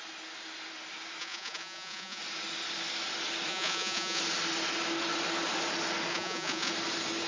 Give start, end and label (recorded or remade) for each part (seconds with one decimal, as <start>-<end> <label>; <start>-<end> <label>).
0.0-1.2 recorded; 1.2-2.2 remade; 2.2-3.5 recorded; 3.5-4.2 remade; 4.2-6.1 recorded; 6.1-6.7 remade; 6.7-7.3 recorded